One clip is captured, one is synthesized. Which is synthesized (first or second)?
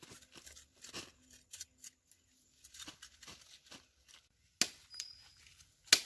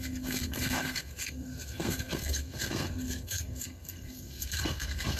second